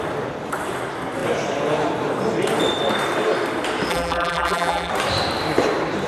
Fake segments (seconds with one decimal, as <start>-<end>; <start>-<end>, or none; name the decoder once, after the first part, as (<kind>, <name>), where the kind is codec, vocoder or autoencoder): 3.9-4.9 (vocoder, BigVGAN v2)